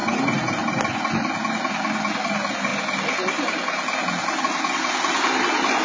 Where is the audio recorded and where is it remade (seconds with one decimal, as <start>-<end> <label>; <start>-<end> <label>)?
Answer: 0.0-0.8 remade; 0.8-5.8 recorded